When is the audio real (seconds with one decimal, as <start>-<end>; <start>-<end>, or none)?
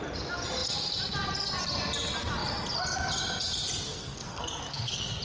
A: 0.0-3.9